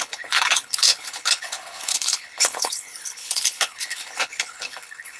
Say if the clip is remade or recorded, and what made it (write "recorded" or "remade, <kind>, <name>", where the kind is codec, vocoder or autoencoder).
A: remade, codec, HILCodec